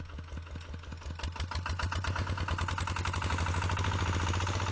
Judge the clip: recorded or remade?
recorded